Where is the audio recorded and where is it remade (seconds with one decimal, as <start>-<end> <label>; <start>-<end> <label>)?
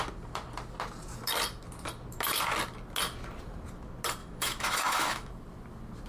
0.0-4.2 recorded; 4.2-5.3 remade; 5.3-6.1 recorded